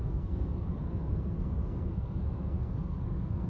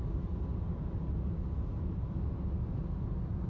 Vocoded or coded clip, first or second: first